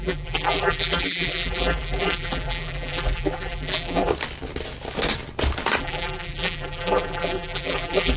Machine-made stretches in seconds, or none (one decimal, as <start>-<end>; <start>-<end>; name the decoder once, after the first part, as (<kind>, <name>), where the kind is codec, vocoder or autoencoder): 0.0-4.1 (vocoder, BigVGAN v2); 5.8-8.2